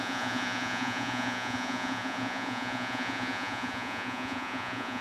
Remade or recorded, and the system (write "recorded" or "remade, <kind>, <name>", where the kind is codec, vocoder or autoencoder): remade, vocoder, Vocos